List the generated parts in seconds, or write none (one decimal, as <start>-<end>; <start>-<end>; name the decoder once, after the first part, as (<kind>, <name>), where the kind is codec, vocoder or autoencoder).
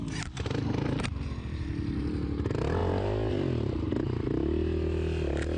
none